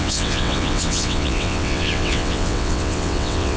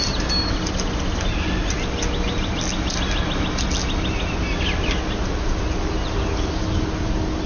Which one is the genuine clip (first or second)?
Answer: second